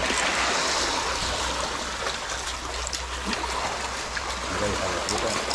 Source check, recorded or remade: recorded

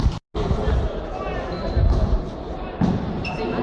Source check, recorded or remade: recorded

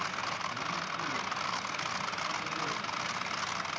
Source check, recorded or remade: recorded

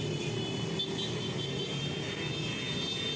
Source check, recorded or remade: recorded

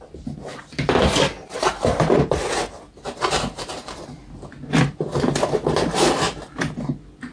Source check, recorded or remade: recorded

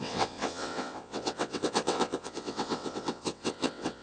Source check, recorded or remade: remade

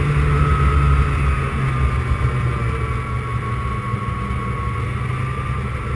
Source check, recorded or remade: recorded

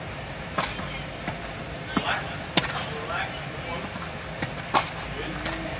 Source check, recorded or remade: recorded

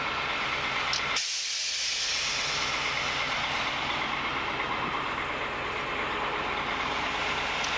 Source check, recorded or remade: recorded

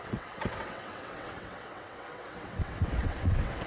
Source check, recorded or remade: remade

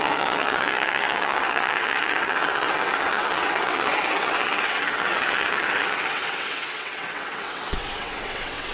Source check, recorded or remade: remade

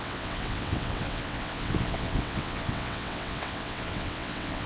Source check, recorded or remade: remade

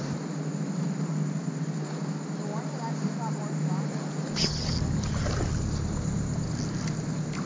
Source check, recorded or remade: recorded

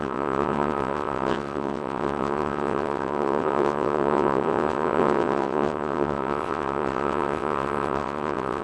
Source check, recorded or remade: remade